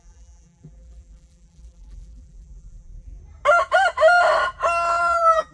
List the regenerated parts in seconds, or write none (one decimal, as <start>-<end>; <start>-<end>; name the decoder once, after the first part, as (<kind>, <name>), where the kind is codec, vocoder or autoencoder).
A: 0.0-3.2 (vocoder, BigVGAN v2); 5.0-5.5